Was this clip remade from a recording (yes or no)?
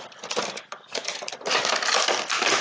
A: no